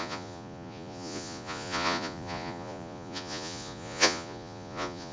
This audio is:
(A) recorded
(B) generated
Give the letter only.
B